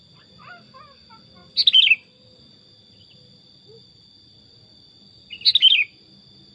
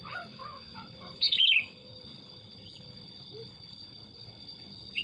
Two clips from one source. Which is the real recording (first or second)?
first